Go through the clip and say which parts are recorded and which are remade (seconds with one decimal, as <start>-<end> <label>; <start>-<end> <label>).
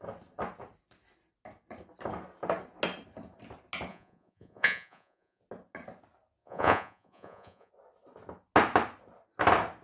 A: 0.0-3.9 recorded; 3.9-5.4 remade; 5.4-6.4 recorded; 6.4-7.7 remade; 7.7-9.8 recorded